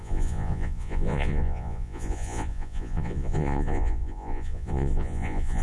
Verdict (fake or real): fake